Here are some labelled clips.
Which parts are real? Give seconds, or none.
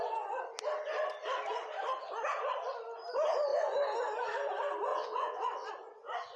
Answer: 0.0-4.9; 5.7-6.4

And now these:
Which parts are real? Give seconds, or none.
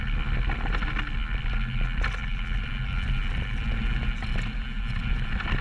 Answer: 0.0-5.6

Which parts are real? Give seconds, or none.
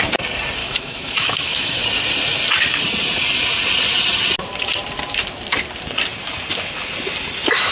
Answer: 0.0-0.6; 1.8-7.7